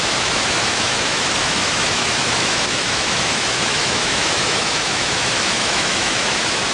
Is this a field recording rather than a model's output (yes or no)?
no